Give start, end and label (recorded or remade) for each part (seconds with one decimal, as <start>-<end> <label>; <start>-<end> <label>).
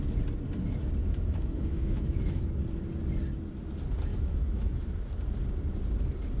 0.0-1.0 recorded; 1.0-2.5 remade; 2.5-4.1 recorded; 4.1-4.7 remade; 4.7-6.4 recorded